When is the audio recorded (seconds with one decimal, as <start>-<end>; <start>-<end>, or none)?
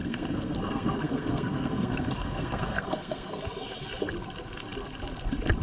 3.4-5.6